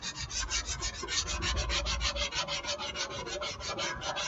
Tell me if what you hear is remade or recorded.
recorded